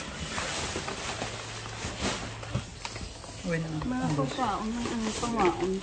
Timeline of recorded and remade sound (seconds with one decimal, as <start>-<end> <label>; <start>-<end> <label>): 0.0-5.8 recorded